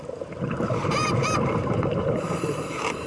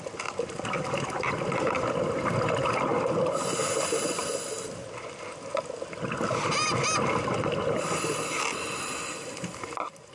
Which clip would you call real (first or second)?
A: second